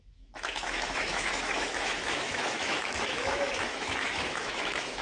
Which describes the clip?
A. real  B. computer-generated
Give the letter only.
B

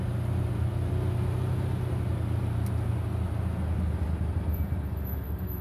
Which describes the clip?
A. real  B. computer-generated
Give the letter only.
A